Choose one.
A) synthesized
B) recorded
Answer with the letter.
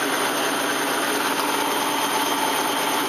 B